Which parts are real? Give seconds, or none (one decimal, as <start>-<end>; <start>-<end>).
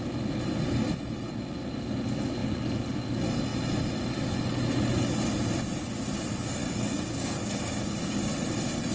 0.0-6.6; 8.2-8.9